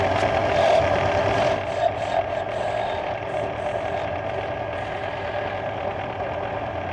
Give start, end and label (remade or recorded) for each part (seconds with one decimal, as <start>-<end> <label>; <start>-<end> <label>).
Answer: 0.0-6.9 recorded